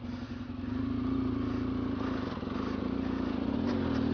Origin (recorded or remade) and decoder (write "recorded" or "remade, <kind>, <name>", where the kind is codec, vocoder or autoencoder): recorded